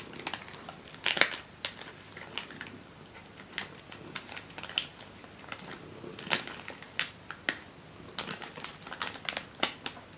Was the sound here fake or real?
real